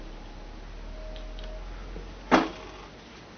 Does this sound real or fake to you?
real